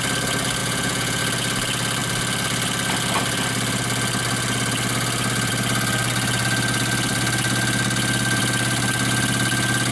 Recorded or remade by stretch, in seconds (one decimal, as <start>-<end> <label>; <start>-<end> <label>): 0.0-0.6 recorded; 0.6-1.2 remade; 1.2-9.9 recorded